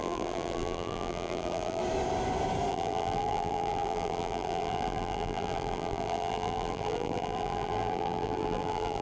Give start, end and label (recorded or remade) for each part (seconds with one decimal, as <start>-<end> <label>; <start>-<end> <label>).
0.0-1.8 remade; 1.8-2.7 recorded; 2.7-9.0 remade

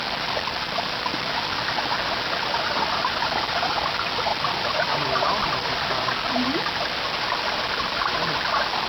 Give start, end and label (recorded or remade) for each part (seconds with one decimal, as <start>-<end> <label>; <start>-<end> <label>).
0.0-4.3 recorded; 4.3-5.7 remade; 5.7-8.9 recorded

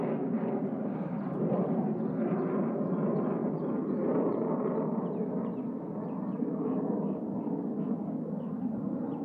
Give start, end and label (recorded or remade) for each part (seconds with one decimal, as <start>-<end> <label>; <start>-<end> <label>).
0.0-9.2 recorded

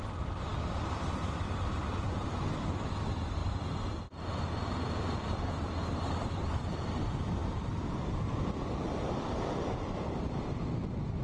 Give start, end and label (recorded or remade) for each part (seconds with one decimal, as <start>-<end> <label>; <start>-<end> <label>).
0.0-3.4 remade; 3.4-4.3 recorded; 4.3-11.2 remade

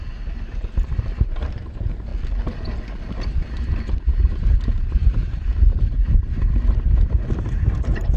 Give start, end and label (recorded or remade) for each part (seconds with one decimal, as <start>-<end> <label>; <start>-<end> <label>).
0.0-2.1 remade; 2.1-3.0 recorded; 3.0-8.2 remade

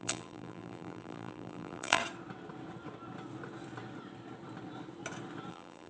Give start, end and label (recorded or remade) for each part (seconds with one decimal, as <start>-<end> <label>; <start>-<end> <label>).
0.0-2.0 remade; 2.0-5.5 recorded; 5.5-5.9 remade

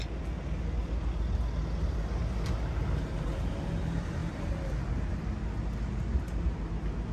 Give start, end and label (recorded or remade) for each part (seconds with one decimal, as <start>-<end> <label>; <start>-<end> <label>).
0.0-7.1 recorded

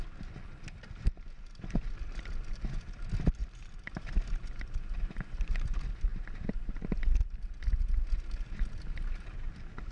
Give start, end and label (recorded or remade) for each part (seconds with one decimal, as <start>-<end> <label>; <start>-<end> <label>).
0.0-3.4 recorded; 3.4-5.5 remade; 5.5-9.9 recorded